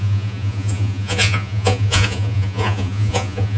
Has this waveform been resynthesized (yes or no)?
yes